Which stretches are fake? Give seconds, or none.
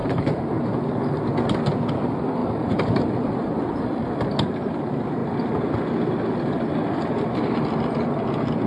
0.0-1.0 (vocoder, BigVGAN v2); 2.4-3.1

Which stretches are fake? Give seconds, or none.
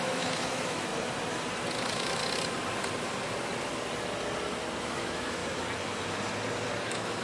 0.0-0.9 (autoencoder, DAC-VAE); 1.8-2.2; 4.8-5.4; 6.8-7.2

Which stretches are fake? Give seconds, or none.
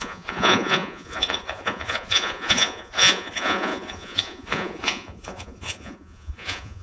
0.0-6.8 (vocoder, Vocos)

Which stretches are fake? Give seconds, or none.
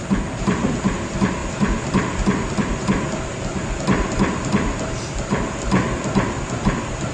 none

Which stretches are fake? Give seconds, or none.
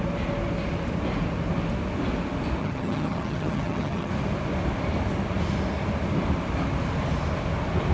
2.6-4.1 (vocoder, HiFi-GAN)